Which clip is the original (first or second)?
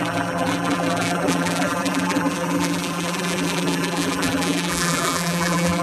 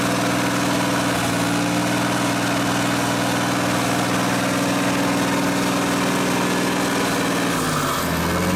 second